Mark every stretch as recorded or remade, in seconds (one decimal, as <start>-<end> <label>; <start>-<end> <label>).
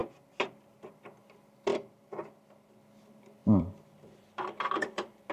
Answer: 0.0-1.7 recorded; 1.7-2.8 remade; 2.8-3.4 recorded; 3.4-5.3 remade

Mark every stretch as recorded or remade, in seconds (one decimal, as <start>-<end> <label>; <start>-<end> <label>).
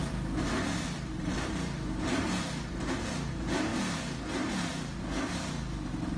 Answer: 0.0-6.2 remade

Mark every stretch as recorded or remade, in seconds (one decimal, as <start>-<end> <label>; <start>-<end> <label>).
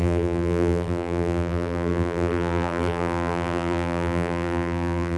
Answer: 0.0-5.2 remade